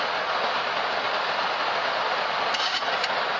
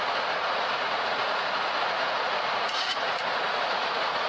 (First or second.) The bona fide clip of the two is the first